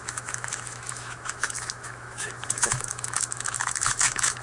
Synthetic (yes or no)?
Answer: yes